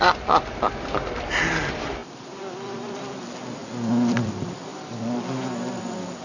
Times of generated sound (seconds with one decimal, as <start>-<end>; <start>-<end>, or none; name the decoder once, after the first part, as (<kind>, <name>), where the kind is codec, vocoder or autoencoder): 2.0-3.2 (vocoder, BigVGAN v2); 3.6-4.3